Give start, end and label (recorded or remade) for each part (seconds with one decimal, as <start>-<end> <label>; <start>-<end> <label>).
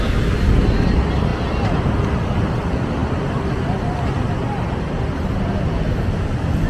0.0-6.7 recorded